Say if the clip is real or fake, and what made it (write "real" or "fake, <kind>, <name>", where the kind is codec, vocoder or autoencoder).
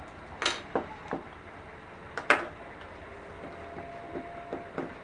real